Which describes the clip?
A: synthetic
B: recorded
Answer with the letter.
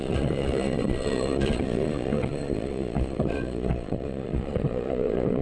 A